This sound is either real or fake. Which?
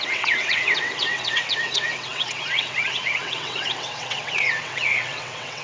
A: fake